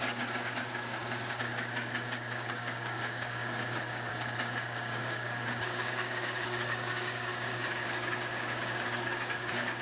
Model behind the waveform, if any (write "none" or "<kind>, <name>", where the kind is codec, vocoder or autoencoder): codec, DAC